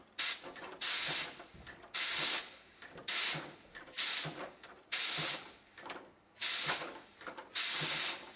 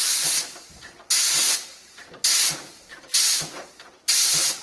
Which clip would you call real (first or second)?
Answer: first